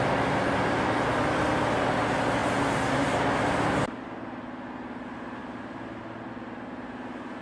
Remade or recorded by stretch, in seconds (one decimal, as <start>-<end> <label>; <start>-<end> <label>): 0.0-7.4 recorded